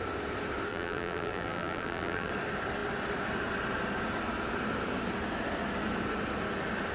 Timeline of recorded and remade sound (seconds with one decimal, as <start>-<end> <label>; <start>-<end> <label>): 0.0-0.7 recorded; 0.7-2.3 remade; 2.3-6.9 recorded